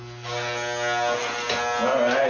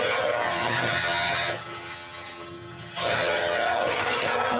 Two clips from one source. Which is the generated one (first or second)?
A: second